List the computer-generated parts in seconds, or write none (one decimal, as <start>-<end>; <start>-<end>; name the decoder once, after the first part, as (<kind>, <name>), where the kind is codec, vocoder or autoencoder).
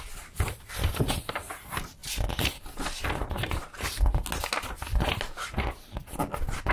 none